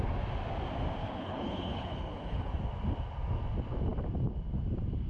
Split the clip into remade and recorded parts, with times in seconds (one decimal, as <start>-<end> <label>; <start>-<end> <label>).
0.0-1.0 recorded; 1.0-2.5 remade; 2.5-5.1 recorded